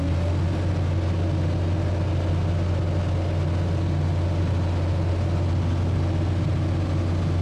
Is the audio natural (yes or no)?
yes